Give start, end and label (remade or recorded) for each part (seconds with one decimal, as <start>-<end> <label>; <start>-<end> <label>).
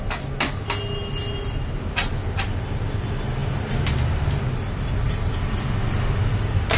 0.0-6.8 recorded